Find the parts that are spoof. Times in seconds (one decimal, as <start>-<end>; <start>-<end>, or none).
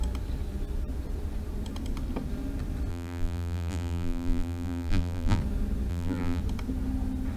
2.9-5.4; 5.9-6.4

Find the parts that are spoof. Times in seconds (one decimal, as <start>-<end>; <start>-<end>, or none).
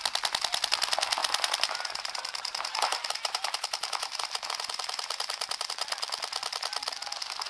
1.2-5.7